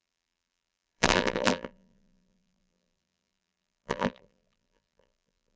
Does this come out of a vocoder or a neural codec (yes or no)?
yes